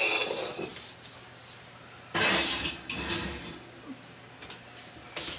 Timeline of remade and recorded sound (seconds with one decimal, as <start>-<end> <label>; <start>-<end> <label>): 0.0-5.4 recorded